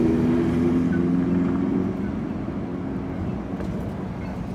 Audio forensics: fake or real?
real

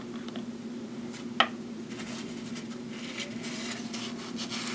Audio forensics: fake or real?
real